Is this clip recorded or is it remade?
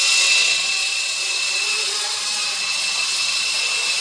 remade